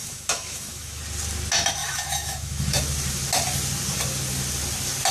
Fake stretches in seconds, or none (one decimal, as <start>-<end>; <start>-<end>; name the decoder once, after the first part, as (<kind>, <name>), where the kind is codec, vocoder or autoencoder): 0.0-1.0 (autoencoder, DAC-VAE); 1.8-2.8